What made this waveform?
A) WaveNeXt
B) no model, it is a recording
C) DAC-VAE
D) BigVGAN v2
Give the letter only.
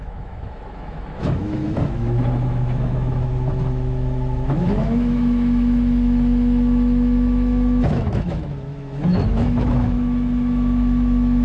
C